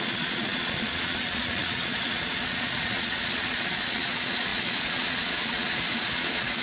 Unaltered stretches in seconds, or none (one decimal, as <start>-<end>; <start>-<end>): none